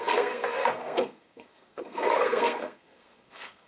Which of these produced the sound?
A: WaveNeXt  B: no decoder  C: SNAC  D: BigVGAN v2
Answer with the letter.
C